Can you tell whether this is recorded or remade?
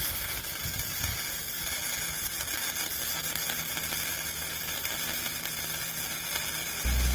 recorded